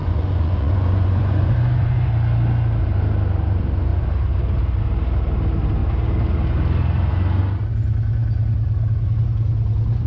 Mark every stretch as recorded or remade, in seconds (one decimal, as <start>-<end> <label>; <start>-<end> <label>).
0.0-2.1 remade; 2.1-10.1 recorded